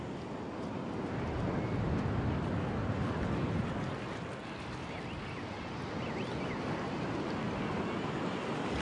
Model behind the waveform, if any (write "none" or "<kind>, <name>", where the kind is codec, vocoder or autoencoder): none